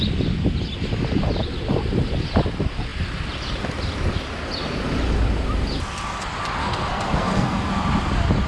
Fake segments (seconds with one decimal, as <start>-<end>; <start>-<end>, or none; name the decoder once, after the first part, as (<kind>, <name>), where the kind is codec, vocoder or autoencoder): 6.6-7.7 (codec, SNAC)